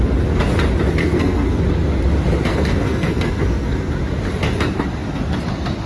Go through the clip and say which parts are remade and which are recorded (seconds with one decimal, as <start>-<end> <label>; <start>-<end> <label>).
0.0-1.0 recorded; 1.0-1.6 remade; 1.6-2.5 recorded; 2.5-3.9 remade; 3.9-5.9 recorded

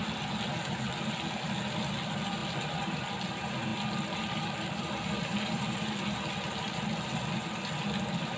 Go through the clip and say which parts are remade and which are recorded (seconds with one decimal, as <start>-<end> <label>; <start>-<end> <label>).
0.0-8.4 recorded

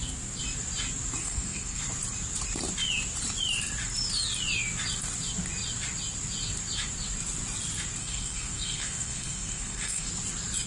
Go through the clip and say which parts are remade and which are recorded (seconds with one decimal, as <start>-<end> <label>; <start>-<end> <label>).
0.0-1.2 recorded; 1.2-1.8 remade; 1.8-8.0 recorded; 8.0-10.1 remade; 10.1-10.7 recorded